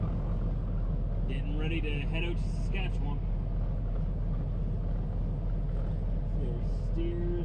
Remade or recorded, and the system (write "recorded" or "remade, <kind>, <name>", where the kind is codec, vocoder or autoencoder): recorded